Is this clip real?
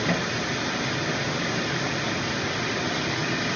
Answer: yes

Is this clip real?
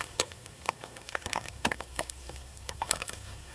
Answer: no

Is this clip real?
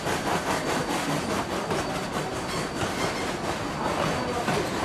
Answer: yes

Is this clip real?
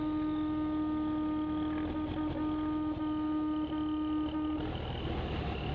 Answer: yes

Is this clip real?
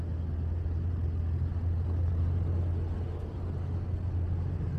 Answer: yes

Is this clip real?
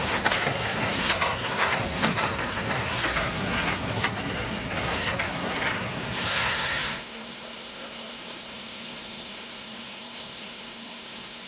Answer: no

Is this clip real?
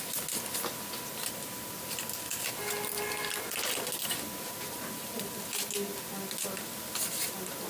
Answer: yes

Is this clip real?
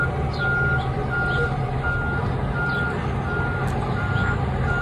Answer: yes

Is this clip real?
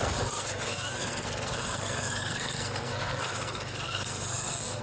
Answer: no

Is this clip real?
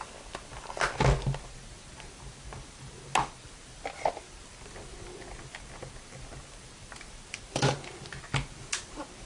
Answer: yes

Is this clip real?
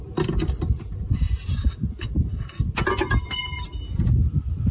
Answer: yes